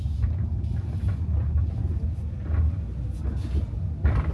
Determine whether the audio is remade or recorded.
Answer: recorded